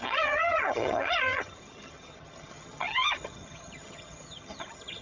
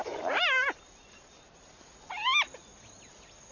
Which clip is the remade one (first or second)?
first